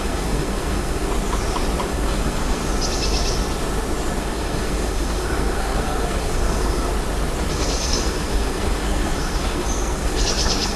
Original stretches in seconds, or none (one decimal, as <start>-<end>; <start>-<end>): 1.1-1.9; 2.6-4.2; 6.9-7.5